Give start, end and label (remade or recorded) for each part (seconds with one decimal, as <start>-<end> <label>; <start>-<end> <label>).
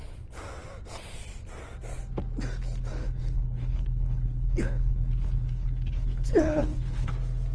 0.0-2.9 recorded; 2.9-7.1 remade; 7.1-7.5 recorded